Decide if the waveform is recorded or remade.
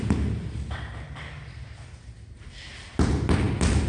recorded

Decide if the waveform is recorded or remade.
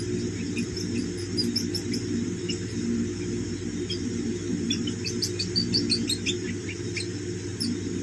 remade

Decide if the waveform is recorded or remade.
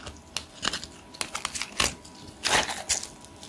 recorded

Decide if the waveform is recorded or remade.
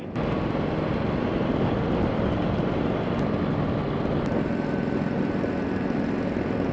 recorded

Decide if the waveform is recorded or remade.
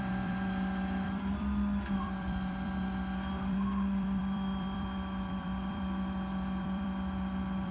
remade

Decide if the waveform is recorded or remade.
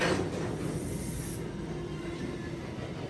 recorded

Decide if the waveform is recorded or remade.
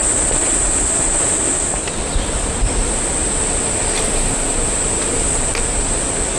remade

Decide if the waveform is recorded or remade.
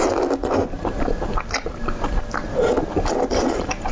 recorded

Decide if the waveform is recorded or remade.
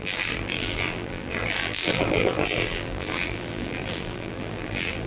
remade